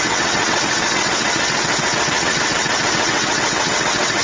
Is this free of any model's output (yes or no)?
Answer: no